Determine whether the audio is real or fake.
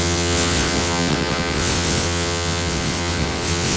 fake